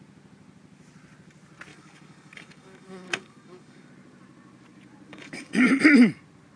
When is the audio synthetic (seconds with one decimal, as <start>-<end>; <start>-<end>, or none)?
1.7-3.9; 5.1-5.7